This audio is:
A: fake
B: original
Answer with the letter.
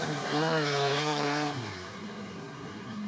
A